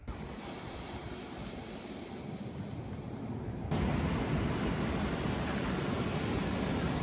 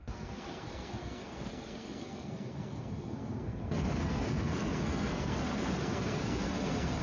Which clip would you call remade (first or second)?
second